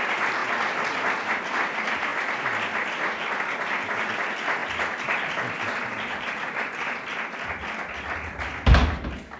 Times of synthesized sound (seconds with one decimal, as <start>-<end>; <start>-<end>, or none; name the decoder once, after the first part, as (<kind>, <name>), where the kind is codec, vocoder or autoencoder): none